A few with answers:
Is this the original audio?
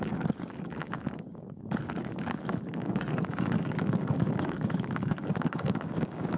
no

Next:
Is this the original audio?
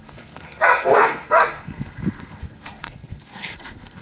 no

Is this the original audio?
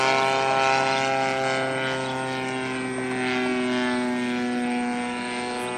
yes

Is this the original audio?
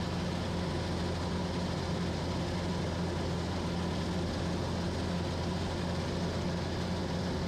yes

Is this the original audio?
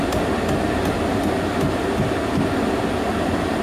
yes